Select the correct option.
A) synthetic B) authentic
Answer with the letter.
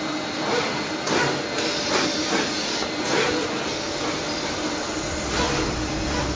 B